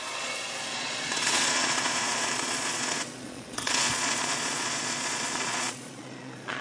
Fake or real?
fake